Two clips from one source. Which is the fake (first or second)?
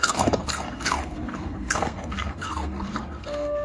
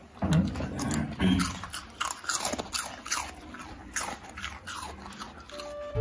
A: first